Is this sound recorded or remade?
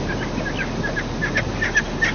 recorded